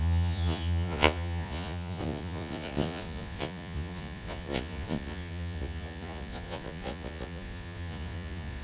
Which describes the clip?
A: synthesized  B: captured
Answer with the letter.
A